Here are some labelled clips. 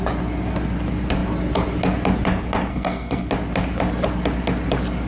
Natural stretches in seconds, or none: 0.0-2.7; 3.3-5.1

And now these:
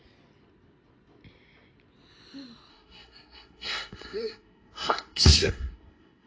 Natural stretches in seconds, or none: 0.0-2.7

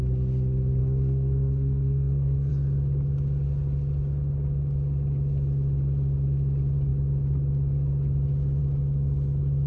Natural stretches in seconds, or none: 0.0-0.8; 2.5-9.7

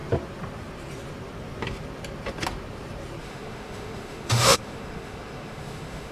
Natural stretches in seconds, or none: 0.0-3.2

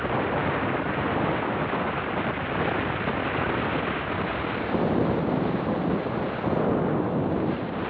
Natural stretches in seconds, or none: 0.0-7.9

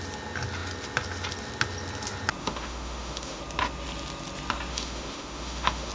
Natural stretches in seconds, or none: 0.0-2.4; 3.4-4.7

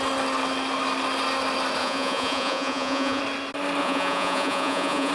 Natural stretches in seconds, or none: 0.0-1.8; 3.2-3.8